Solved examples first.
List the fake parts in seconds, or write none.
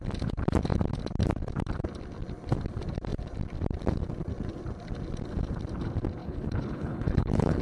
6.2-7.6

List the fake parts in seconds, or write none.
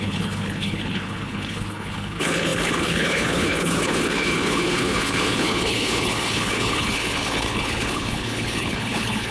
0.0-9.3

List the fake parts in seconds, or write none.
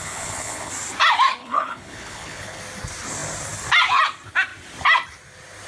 0.0-0.7; 1.4-2.6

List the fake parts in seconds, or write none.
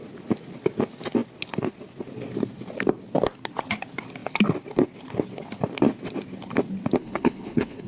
7.0-7.9